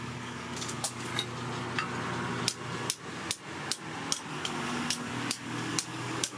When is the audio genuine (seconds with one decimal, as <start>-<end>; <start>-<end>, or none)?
1.1-4.3